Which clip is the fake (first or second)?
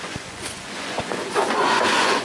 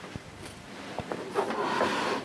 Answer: first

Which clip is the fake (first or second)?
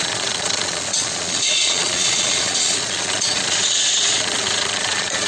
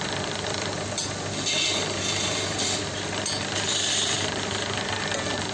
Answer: first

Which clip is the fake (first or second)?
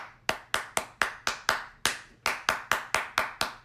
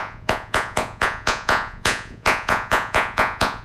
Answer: second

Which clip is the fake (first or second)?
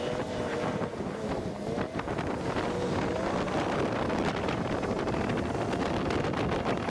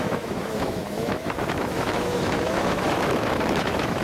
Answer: second